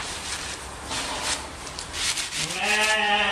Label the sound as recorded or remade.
recorded